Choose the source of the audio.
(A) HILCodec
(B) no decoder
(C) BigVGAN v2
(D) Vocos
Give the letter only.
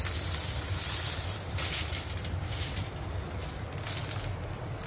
B